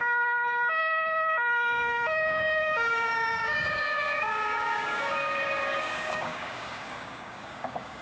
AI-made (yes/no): yes